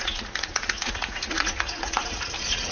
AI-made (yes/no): yes